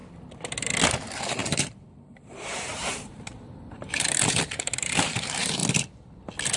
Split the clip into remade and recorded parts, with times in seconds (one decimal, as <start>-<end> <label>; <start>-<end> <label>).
0.0-0.9 recorded; 0.9-5.6 remade; 5.6-6.6 recorded

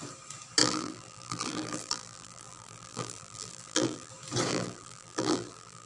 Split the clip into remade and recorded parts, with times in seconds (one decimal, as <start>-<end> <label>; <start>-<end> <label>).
0.0-0.6 recorded; 0.6-4.1 remade; 4.1-4.5 recorded; 4.5-5.9 remade